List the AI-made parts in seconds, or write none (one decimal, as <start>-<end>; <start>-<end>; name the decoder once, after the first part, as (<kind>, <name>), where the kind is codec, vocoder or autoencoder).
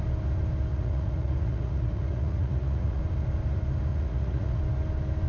0.7-3.0 (vocoder, Vocos); 3.9-4.6